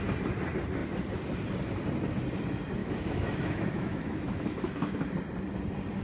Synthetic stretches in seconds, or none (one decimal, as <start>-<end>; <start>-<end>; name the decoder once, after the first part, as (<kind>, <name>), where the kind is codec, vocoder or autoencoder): 2.8-5.1 (autoencoder, DAC-VAE)